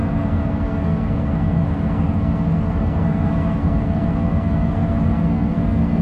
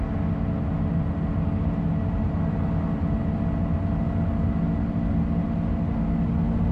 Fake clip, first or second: first